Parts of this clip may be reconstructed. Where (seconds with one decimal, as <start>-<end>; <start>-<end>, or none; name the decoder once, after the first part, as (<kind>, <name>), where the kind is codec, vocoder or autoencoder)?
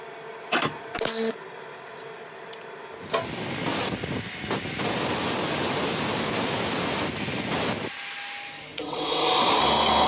8.7-9.2 (vocoder, WaveNeXt)